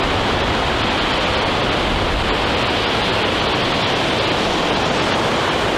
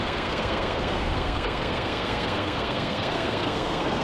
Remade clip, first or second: second